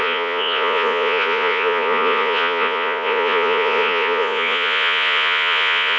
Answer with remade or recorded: remade